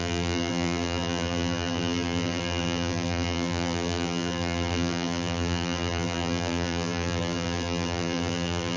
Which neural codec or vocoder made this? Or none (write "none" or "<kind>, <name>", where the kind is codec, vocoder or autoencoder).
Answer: vocoder, BigVGAN v2